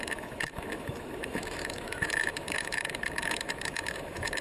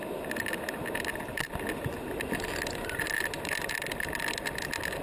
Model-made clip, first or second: first